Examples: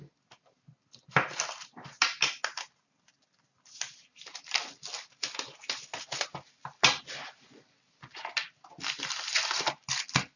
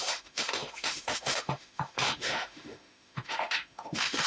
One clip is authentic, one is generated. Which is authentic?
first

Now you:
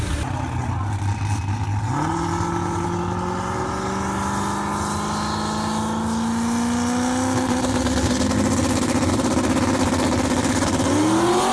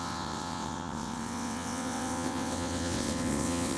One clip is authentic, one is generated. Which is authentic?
first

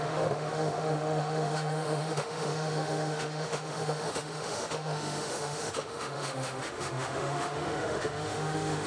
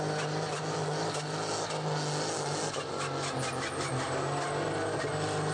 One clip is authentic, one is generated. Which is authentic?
second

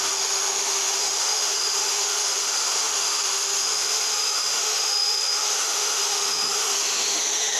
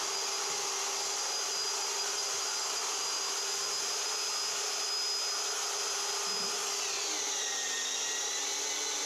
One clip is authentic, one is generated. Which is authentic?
second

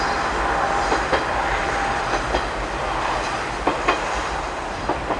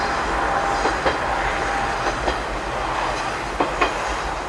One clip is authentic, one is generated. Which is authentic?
second